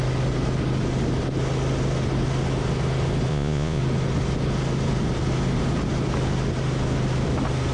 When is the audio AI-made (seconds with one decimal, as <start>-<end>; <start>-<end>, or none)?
3.3-3.8